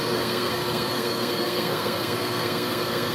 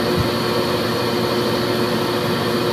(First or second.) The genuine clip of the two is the second